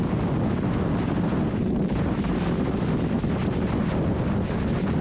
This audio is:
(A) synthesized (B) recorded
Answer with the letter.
B